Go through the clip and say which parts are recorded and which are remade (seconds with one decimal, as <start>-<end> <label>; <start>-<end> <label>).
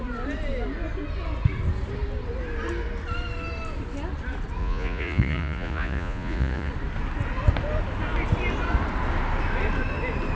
0.0-4.6 recorded; 4.6-6.7 remade; 6.7-10.4 recorded